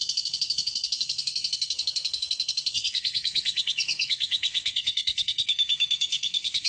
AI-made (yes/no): yes